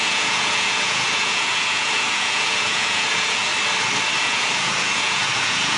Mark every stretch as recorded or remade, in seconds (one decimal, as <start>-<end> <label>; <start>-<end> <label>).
0.0-3.5 remade; 3.5-4.2 recorded; 4.2-5.8 remade